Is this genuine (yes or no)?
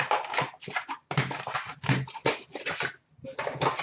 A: yes